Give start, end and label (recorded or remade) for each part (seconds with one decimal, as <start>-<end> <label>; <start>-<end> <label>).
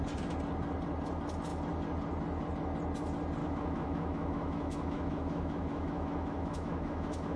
0.0-3.4 recorded; 3.4-7.4 remade